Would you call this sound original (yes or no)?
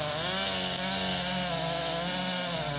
yes